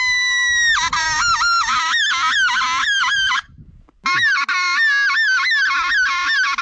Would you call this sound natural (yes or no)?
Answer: yes